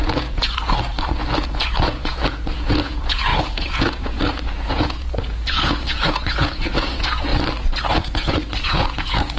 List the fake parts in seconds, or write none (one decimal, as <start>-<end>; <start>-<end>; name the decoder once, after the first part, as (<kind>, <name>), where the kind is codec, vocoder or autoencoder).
0.0-0.5 (vocoder, Vocos); 1.1-7.3; 7.9-9.4